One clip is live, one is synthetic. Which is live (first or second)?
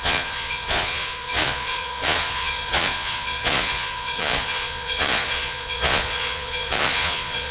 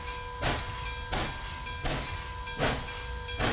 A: second